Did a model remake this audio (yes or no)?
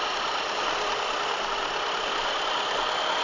no